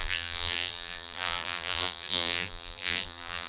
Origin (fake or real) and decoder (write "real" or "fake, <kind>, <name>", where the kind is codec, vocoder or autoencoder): fake, vocoder, BigVGAN v2